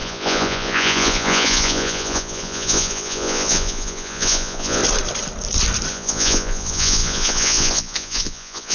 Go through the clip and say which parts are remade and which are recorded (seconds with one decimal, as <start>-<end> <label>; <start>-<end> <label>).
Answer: 0.0-4.8 remade; 4.8-5.9 recorded; 5.9-8.7 remade